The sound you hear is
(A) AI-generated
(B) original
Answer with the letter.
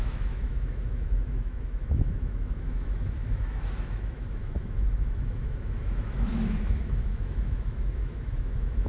A